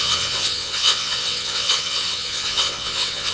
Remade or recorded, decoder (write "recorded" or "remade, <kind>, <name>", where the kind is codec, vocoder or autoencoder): remade, vocoder, WaveNeXt